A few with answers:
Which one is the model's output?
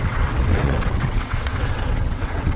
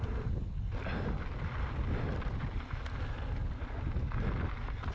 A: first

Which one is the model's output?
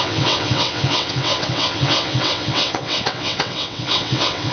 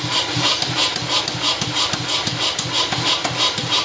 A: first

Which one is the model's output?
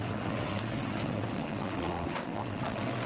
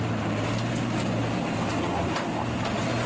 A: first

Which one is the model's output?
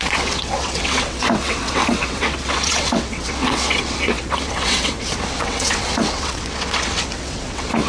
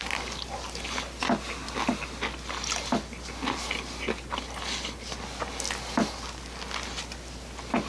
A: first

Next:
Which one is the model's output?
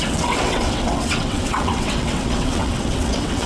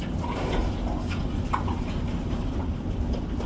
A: first